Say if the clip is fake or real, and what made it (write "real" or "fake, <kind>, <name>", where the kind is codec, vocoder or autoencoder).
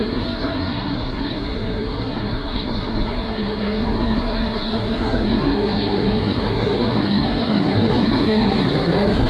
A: fake, codec, SNAC